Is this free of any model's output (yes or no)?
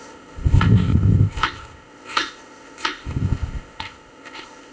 no